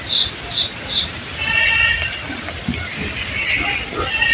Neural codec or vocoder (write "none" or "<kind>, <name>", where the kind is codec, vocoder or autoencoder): none